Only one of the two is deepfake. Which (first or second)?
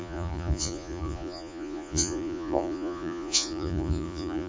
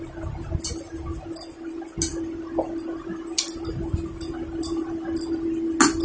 first